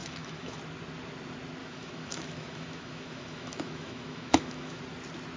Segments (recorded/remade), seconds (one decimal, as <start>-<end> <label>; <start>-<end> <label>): 0.0-0.6 remade; 0.6-1.6 recorded; 1.6-4.8 remade; 4.8-5.4 recorded